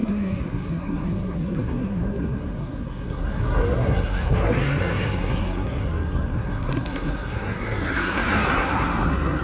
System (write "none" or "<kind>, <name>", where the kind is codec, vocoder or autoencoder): codec, SNAC